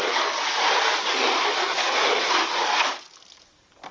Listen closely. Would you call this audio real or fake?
real